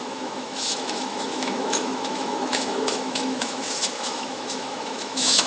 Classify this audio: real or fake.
fake